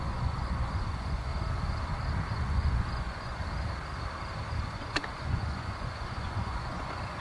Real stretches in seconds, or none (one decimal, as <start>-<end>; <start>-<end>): 1.3-2.3; 3.4-4.5

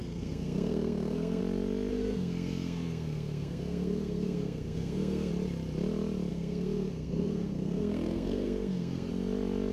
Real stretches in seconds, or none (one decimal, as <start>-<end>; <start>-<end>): 1.4-1.9; 5.3-6.3; 9.1-9.7

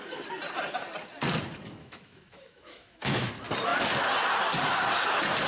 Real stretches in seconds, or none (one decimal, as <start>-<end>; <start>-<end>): 0.0-1.8; 3.3-5.5

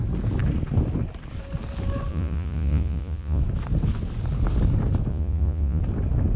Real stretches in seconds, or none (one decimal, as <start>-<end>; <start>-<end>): 0.0-2.1; 3.4-5.1; 5.8-6.4

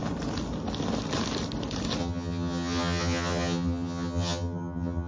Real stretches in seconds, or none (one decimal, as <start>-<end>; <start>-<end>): 0.0-2.0

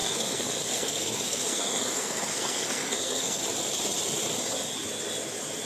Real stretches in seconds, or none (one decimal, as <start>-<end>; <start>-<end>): 3.4-5.7

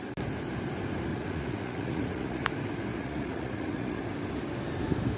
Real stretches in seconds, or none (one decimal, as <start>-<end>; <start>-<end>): 0.0-1.1; 2.5-2.9; 4.0-5.2

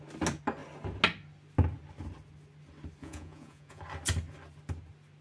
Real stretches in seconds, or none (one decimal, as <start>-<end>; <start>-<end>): 0.0-3.0; 3.8-5.2